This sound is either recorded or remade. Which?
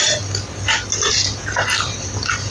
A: recorded